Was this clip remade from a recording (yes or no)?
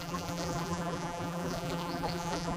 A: yes